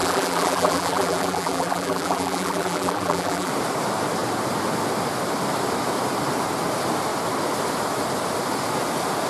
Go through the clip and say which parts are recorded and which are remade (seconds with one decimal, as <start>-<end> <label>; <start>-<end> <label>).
0.0-3.5 remade; 3.5-9.3 recorded